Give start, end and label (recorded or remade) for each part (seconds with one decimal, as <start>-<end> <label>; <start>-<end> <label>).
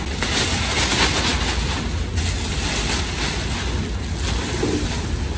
0.0-5.4 recorded